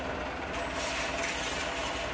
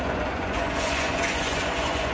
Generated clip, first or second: second